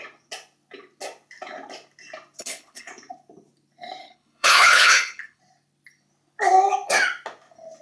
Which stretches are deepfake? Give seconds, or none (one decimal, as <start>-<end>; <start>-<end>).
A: 2.4-2.9; 4.0-5.4